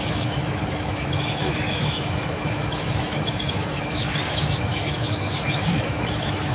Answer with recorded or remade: remade